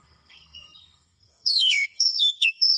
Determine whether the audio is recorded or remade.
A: remade